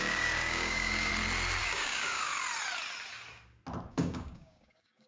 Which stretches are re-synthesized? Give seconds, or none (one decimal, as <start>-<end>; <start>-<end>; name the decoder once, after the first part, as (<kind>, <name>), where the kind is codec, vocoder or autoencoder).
0.0-1.1 (codec, DAC); 1.6-2.3; 3.9-5.1